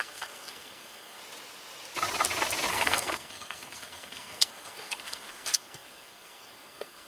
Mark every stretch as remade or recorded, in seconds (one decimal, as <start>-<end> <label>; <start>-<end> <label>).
0.0-1.2 remade; 1.2-2.7 recorded; 2.7-7.1 remade